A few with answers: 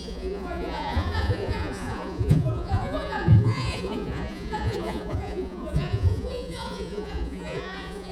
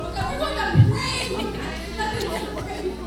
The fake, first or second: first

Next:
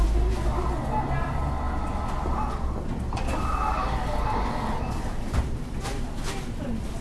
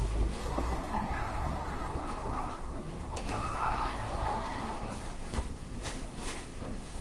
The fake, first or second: second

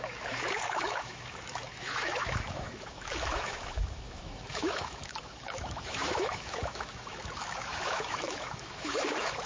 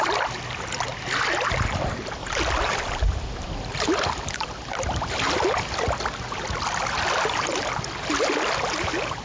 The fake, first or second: first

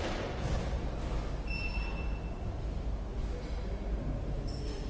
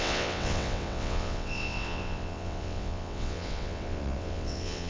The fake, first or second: second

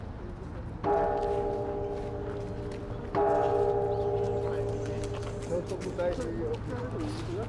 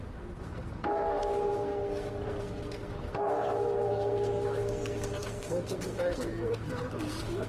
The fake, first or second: second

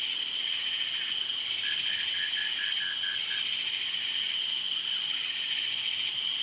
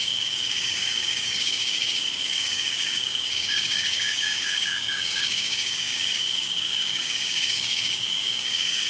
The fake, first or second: second